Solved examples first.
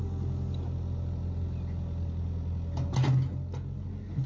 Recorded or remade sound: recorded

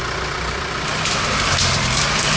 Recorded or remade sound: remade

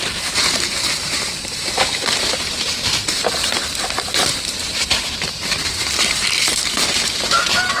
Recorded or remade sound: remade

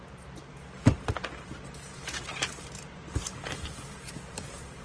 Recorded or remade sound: remade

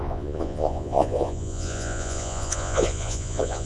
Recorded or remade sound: remade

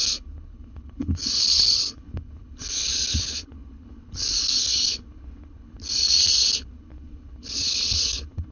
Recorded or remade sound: remade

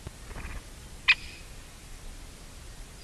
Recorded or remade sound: recorded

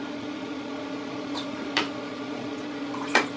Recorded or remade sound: remade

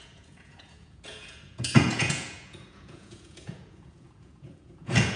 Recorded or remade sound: remade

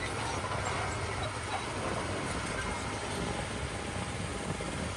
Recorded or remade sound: recorded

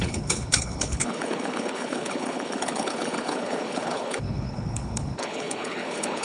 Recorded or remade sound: remade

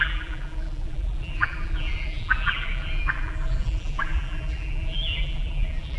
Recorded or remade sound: remade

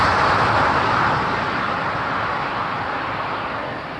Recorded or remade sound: remade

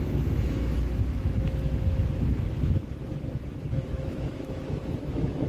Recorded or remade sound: remade